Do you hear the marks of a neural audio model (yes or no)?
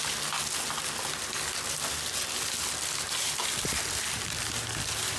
no